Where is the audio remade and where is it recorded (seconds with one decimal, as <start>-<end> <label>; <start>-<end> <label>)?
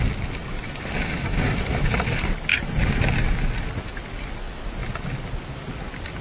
0.0-0.4 recorded; 0.4-1.9 remade; 1.9-2.5 recorded; 2.5-3.5 remade; 3.5-6.2 recorded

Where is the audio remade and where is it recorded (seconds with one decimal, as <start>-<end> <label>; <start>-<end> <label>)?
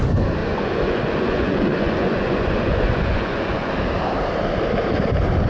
0.0-0.4 recorded; 0.4-3.7 remade; 3.7-5.5 recorded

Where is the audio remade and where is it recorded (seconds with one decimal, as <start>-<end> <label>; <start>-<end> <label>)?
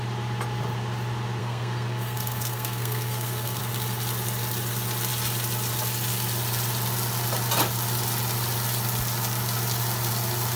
0.0-1.4 recorded; 1.4-3.6 remade; 3.6-10.6 recorded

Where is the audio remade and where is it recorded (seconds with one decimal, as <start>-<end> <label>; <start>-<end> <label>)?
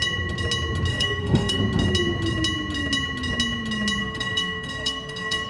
0.0-0.9 recorded; 0.9-1.6 remade; 1.6-4.0 recorded; 4.0-5.5 remade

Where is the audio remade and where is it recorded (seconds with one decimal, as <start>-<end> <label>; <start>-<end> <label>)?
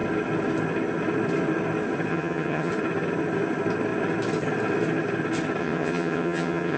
0.0-2.1 recorded; 2.1-2.7 remade; 2.7-5.6 recorded; 5.6-6.8 remade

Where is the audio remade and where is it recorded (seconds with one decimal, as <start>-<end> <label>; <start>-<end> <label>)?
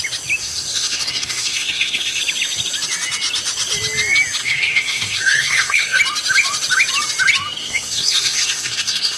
0.0-0.4 recorded; 0.4-2.2 remade; 2.2-4.4 recorded; 4.4-6.0 remade; 6.0-7.6 recorded; 7.6-9.2 remade